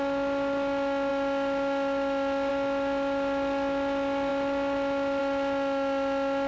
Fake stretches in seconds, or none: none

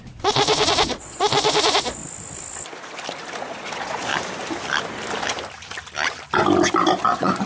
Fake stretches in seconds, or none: 0.0-2.0; 3.4-4.1; 7.0-7.5